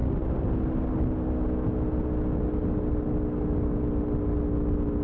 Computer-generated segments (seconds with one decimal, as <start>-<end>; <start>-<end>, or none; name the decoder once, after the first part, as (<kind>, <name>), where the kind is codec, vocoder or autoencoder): none